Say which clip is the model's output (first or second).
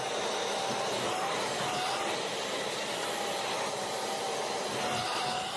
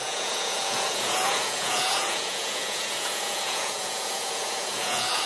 second